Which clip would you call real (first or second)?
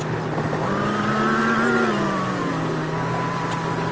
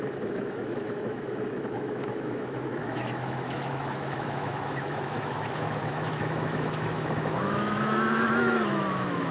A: first